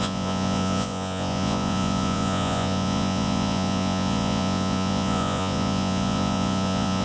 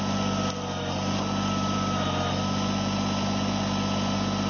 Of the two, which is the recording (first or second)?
second